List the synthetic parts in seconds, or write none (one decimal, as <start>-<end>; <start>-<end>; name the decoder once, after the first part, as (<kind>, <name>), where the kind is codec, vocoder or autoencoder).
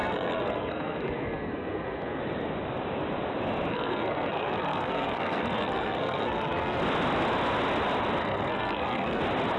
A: 0.0-2.2 (codec, SNAC); 3.7-6.8; 8.2-9.2